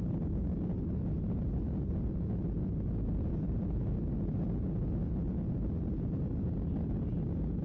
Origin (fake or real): real